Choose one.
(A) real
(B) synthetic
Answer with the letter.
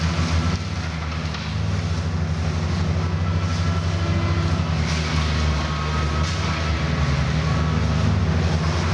A